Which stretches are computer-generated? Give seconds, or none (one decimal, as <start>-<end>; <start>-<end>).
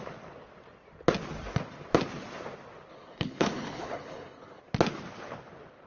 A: 2.9-4.6